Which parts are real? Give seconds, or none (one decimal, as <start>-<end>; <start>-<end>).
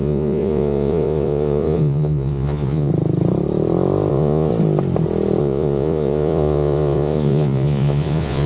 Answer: 2.9-4.1; 4.5-5.4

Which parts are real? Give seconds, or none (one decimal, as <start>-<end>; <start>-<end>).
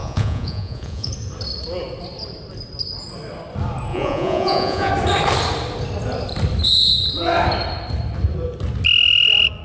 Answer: 1.1-3.9; 4.9-9.6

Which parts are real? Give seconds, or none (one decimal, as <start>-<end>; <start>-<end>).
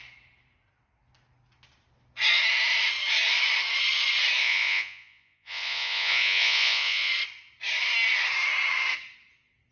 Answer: 0.0-4.4; 7.1-9.7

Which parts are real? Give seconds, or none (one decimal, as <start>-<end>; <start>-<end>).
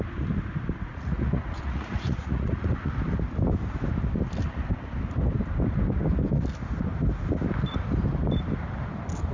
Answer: 0.0-0.9; 2.9-9.3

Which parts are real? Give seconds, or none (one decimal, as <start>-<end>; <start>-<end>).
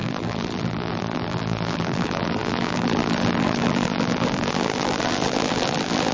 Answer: none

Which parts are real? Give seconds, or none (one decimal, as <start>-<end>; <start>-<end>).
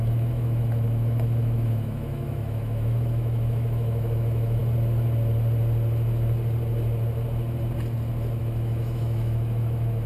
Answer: 4.6-8.4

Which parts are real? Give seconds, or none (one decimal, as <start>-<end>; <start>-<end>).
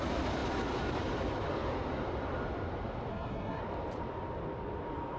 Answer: 0.0-3.1; 3.6-5.2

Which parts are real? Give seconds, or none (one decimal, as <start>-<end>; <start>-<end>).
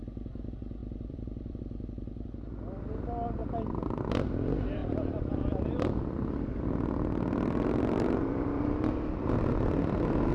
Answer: 0.0-0.8; 1.6-4.8